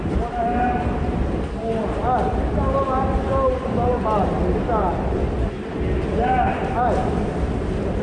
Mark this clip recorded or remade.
recorded